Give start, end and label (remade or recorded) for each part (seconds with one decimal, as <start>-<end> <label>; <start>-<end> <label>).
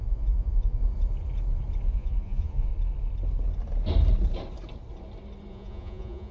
0.0-0.8 remade; 0.8-1.9 recorded; 1.9-2.7 remade; 2.7-5.5 recorded; 5.5-6.3 remade